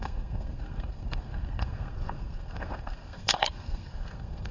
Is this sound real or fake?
fake